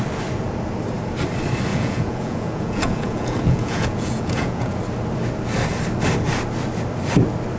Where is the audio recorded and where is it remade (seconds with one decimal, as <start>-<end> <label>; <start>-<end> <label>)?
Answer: 0.0-1.7 recorded; 1.7-4.8 remade; 4.8-7.6 recorded